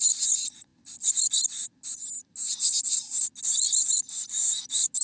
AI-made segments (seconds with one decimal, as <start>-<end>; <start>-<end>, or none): none